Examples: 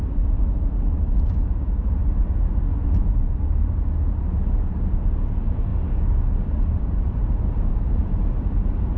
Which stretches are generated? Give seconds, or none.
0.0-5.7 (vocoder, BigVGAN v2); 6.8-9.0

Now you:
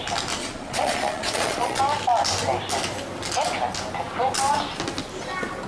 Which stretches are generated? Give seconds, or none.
0.4-1.8 (vocoder, Vocos)